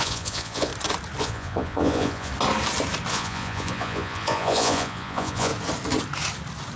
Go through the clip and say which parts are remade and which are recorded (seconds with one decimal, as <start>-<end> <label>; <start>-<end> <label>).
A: 0.0-0.7 remade; 0.7-1.2 recorded; 1.2-2.3 remade; 2.3-3.1 recorded; 3.1-5.5 remade; 5.5-6.8 recorded